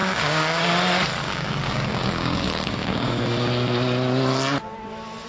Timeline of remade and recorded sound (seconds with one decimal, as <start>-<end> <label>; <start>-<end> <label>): 0.0-0.6 remade; 0.6-1.2 recorded; 1.2-3.2 remade; 3.2-5.3 recorded